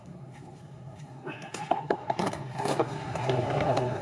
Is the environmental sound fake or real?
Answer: fake